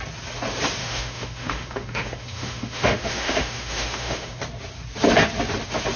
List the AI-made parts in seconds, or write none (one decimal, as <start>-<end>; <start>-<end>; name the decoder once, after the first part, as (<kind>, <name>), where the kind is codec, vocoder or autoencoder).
0.8-4.4 (autoencoder, DAC-VAE)